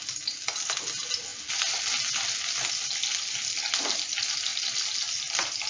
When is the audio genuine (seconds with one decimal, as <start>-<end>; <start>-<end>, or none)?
0.0-5.7